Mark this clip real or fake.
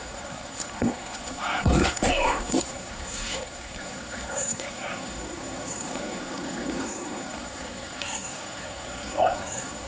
fake